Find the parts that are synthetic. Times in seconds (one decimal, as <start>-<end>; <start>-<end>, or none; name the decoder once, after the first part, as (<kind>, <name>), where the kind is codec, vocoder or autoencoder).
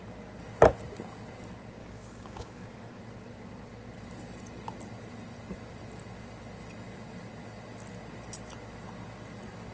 1.8-3.0 (codec, DAC)